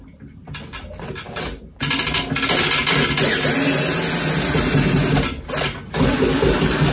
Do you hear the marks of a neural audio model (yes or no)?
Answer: no